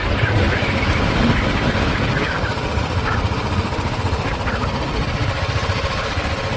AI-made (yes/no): no